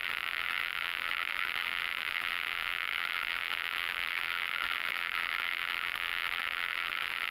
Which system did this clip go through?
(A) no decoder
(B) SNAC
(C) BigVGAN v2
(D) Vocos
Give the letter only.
C